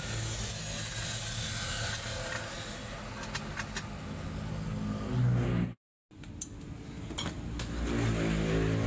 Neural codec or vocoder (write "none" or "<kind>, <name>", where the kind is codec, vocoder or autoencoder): none